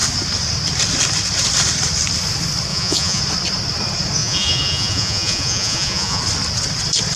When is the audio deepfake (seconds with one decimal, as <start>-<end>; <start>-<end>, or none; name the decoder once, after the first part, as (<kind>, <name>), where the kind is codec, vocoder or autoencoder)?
2.7-3.2 (vocoder, Vocos); 4.2-6.2